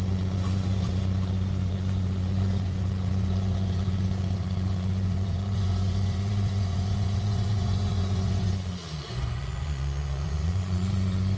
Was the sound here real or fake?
fake